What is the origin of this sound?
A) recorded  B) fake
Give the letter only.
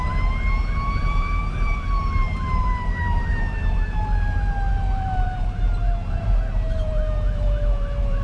B